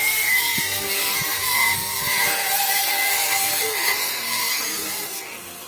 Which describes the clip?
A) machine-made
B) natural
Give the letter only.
A